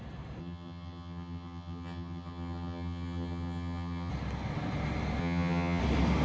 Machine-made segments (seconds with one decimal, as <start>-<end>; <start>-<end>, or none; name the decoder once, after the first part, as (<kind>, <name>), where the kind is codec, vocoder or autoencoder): 0.4-4.1 (vocoder, HiFi-GAN); 5.2-5.8